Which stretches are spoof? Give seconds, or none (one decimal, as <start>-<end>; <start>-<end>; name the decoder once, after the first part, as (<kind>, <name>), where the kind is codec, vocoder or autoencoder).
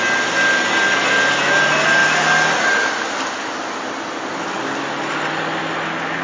none